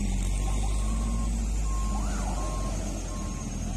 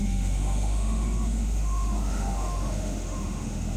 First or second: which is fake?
second